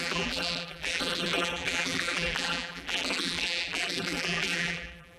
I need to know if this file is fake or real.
fake